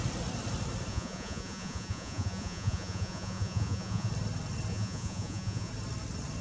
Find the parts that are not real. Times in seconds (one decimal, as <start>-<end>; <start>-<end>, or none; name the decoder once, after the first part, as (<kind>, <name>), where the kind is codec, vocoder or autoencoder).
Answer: 0.9-4.1 (vocoder, Vocos); 4.7-5.7